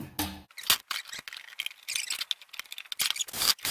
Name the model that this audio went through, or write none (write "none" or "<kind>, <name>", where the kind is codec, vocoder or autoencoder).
none